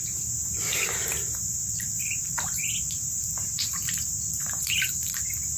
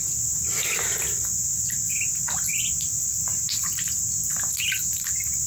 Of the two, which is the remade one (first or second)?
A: first